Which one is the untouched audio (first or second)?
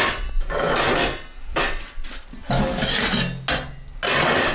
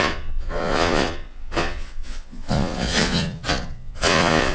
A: first